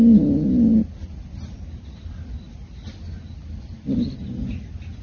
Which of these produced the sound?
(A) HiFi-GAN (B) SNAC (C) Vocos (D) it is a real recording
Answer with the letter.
D